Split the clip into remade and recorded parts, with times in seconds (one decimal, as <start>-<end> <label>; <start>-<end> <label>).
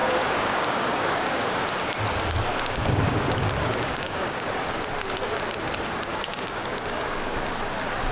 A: 0.0-1.6 remade; 1.6-2.5 recorded; 2.5-4.5 remade; 4.5-6.1 recorded; 6.1-7.5 remade; 7.5-8.1 recorded